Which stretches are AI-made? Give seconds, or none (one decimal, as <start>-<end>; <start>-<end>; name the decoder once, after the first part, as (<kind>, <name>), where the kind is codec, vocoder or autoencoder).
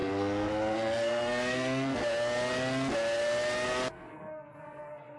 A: 0.0-2.0 (codec, SNAC); 3.9-5.2